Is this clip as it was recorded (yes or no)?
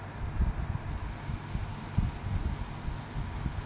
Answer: yes